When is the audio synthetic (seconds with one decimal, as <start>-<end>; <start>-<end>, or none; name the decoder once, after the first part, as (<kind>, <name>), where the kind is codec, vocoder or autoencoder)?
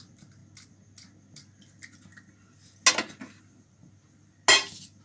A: none